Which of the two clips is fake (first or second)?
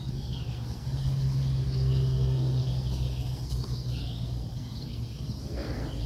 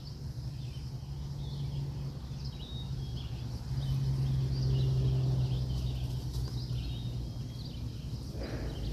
first